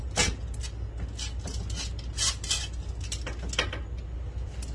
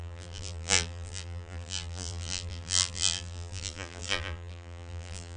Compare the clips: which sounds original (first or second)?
first